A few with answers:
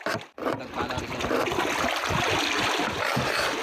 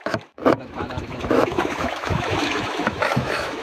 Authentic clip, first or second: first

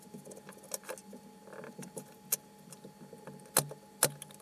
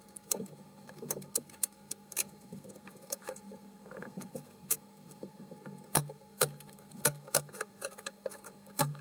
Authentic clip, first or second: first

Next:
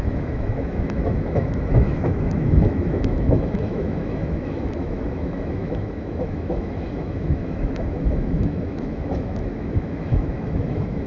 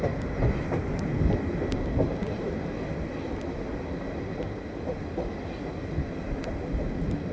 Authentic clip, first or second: second